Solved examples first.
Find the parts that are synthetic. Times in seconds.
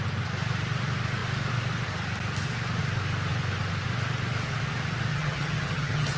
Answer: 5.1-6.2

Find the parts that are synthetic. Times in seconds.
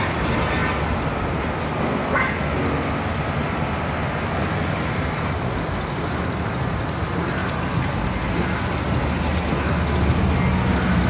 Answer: none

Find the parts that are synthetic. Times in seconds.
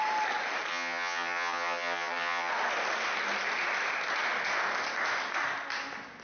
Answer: 0.7-2.5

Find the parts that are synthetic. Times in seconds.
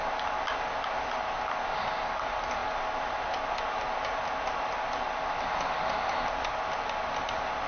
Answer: none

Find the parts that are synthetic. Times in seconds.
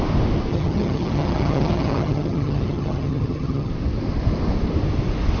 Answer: 0.5-3.7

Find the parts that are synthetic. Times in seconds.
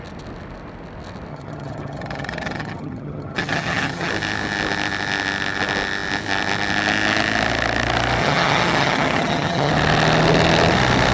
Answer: 1.3-4.1; 8.2-9.7